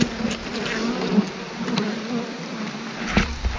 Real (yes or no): yes